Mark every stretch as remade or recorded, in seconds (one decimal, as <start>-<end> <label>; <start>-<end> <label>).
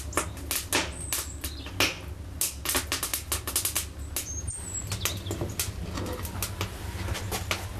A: 0.0-7.8 recorded